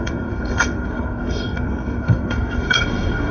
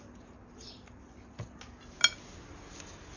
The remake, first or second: first